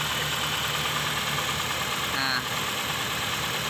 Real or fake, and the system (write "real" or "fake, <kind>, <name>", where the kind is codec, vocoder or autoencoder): real